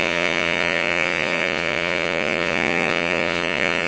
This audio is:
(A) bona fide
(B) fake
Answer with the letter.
B